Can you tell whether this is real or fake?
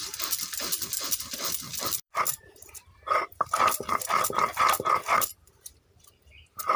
real